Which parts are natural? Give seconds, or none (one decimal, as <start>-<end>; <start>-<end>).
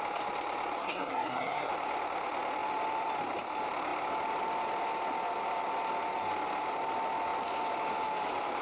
0.0-0.8; 1.7-8.6